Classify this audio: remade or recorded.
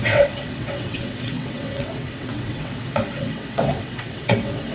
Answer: remade